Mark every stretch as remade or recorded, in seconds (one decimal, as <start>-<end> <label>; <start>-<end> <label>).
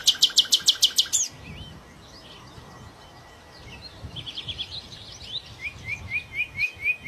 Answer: 0.0-3.9 recorded; 3.9-5.9 remade; 5.9-7.1 recorded